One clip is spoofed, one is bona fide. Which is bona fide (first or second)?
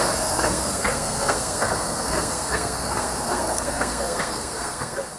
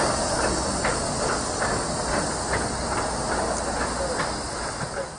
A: second